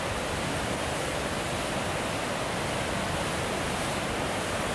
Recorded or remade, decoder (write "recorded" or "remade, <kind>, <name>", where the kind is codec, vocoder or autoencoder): recorded